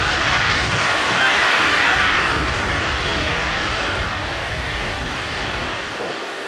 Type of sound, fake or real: fake